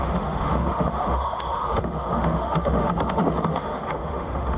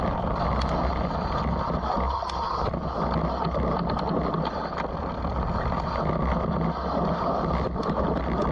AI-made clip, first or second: first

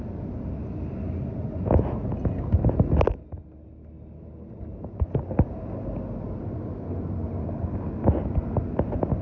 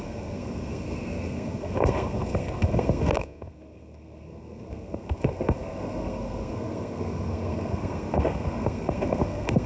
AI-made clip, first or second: second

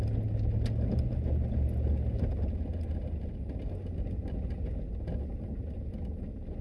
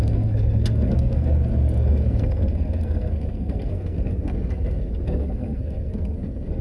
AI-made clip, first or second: second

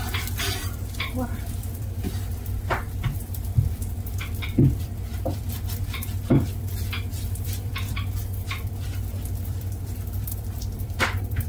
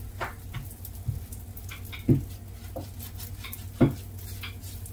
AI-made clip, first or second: first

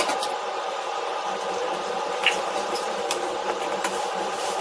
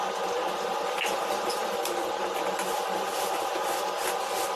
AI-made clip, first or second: first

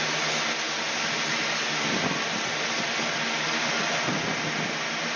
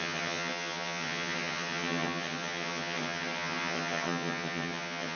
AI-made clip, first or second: second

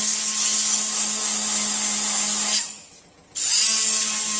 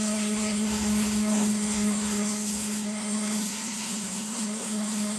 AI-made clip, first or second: second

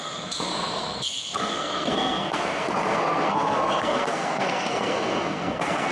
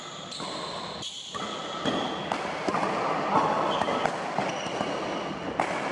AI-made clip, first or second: first